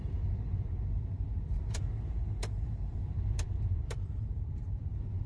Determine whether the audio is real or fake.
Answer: fake